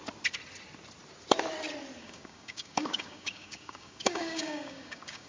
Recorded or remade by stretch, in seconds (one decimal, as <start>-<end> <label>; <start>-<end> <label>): 0.0-2.0 recorded; 2.0-5.3 remade